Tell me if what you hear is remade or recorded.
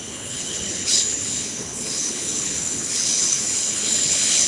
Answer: remade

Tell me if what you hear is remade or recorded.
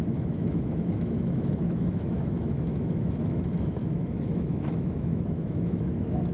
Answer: remade